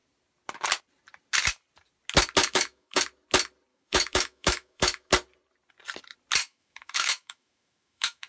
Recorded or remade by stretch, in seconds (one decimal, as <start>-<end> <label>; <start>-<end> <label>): 0.0-2.4 recorded; 2.4-3.0 remade; 3.0-3.7 recorded; 3.7-5.1 remade; 5.1-6.4 recorded; 6.4-8.3 remade